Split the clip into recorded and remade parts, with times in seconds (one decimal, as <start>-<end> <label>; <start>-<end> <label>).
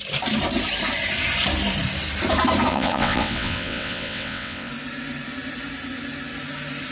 0.0-2.7 recorded; 2.7-4.7 remade; 4.7-6.9 recorded